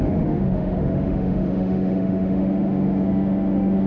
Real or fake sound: fake